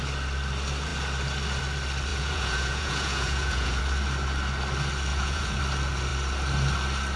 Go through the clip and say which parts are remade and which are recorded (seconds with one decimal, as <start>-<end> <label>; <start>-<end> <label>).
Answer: 0.0-2.1 recorded; 2.1-3.8 remade; 3.8-5.1 recorded; 5.1-5.6 remade; 5.6-7.2 recorded